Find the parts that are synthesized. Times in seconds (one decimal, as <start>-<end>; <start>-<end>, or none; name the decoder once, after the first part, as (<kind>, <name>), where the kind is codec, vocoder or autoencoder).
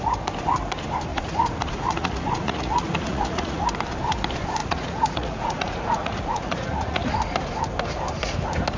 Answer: 1.1-3.6 (vocoder, Vocos); 4.6-7.1